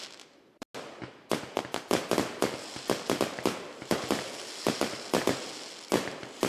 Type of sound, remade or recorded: recorded